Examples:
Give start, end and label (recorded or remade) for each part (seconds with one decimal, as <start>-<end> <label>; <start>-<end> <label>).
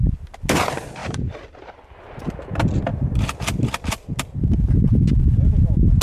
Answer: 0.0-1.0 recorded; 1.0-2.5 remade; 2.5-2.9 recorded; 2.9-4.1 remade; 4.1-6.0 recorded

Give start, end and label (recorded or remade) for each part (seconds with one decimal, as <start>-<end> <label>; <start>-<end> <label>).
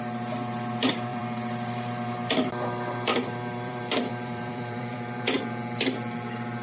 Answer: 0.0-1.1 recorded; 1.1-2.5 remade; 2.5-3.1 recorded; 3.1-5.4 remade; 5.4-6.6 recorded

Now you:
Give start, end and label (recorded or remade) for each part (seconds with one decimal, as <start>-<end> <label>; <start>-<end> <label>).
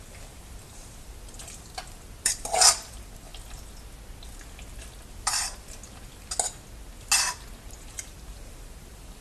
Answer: 0.0-3.3 remade; 3.3-5.1 recorded; 5.1-5.8 remade; 5.8-8.0 recorded; 8.0-9.2 remade